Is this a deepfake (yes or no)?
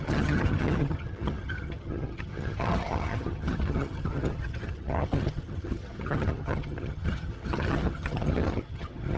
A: yes